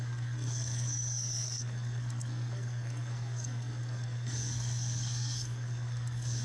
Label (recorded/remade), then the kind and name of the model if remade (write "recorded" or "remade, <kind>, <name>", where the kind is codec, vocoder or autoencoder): remade, codec, SNAC